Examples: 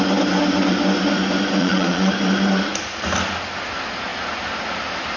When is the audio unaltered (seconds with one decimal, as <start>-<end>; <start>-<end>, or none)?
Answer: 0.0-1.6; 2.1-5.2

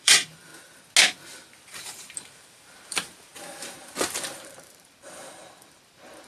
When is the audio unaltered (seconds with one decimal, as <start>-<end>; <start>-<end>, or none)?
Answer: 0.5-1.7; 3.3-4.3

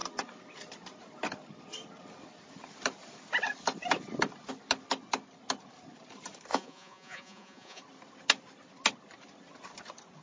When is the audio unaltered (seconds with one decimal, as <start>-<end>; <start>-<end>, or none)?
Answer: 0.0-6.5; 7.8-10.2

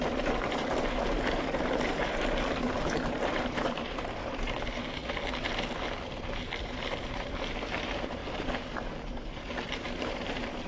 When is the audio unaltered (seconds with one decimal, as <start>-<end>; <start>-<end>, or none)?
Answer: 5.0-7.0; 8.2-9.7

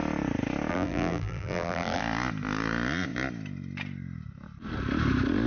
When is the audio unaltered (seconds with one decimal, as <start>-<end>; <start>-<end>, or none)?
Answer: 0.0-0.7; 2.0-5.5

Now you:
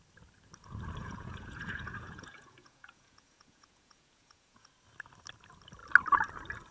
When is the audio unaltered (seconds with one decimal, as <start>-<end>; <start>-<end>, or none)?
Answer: 0.0-1.0; 4.7-6.7

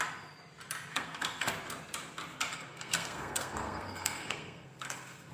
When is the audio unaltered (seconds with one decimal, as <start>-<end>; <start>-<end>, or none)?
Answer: 0.0-0.9; 1.5-2.5

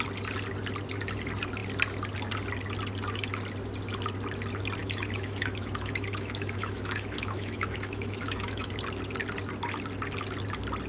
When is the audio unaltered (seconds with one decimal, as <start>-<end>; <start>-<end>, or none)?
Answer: 0.0-4.8; 8.7-10.9